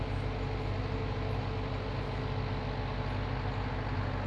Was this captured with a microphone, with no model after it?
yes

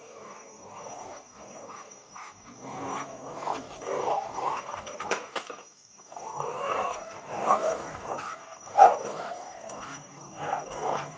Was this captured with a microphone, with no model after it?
no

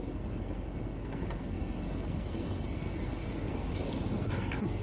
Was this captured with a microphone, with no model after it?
no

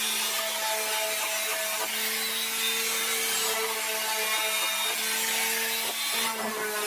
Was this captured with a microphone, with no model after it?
yes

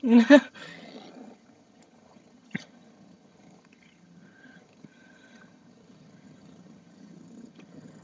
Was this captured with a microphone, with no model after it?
no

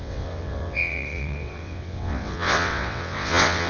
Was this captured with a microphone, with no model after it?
no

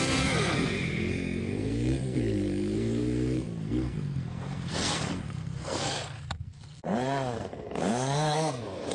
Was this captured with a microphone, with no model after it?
no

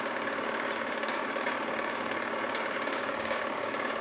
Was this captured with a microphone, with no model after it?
no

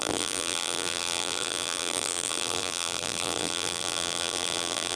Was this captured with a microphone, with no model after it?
no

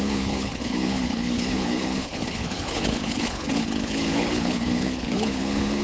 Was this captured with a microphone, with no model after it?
no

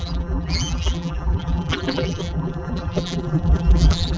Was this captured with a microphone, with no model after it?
no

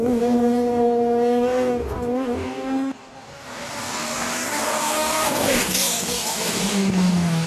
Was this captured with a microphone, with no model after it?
no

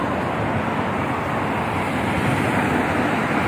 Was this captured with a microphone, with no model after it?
yes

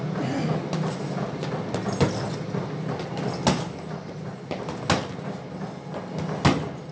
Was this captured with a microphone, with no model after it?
yes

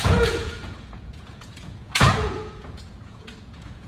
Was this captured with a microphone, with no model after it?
no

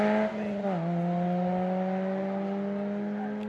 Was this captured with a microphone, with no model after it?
yes